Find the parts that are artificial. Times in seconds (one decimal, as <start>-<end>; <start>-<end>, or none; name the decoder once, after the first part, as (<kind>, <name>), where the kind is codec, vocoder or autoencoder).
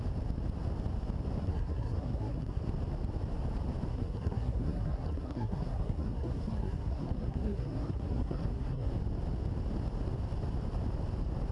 1.4-2.6 (codec, SNAC); 3.9-8.9